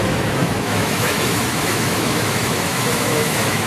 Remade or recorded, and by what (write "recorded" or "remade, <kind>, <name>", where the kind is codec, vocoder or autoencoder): remade, autoencoder, DAC-VAE